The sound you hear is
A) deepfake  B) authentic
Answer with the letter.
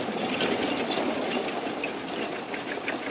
B